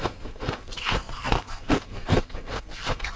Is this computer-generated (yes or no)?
yes